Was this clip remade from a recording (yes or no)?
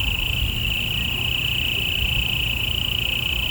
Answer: no